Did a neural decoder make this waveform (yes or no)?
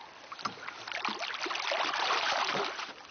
no